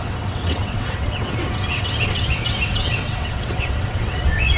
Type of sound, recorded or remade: remade